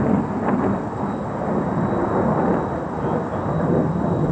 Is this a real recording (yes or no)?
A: yes